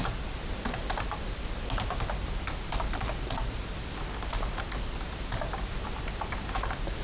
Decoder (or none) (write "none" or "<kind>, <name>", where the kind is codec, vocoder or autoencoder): none